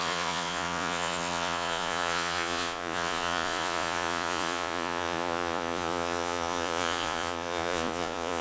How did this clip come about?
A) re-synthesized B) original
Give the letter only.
A